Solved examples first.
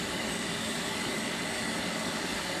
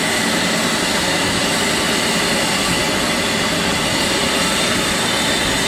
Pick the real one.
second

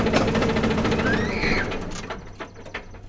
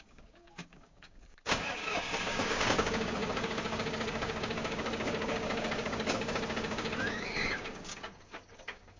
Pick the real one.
first